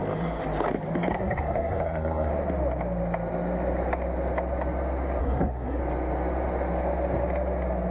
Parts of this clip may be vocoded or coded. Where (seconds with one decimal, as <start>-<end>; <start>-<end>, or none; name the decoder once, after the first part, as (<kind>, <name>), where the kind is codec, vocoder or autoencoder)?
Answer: 1.1-2.3 (codec, SNAC); 5.2-5.8